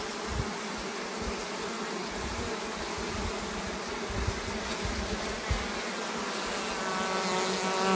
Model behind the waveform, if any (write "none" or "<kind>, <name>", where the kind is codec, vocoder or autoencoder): none